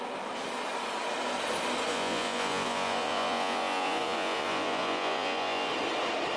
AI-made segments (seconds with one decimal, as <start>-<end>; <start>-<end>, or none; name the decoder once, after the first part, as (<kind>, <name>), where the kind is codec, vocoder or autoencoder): 1.9-5.7 (vocoder, Vocos)